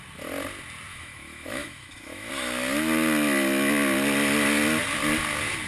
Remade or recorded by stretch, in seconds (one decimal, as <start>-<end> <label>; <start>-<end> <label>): 0.0-0.9 recorded; 0.9-2.3 remade; 2.3-5.7 recorded